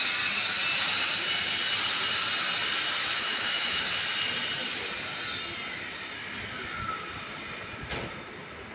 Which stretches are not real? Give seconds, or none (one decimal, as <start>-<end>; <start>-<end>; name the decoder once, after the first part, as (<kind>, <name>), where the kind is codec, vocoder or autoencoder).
3.0-3.8 (autoencoder, DAC-VAE)